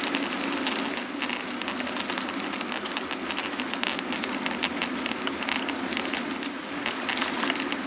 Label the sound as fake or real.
real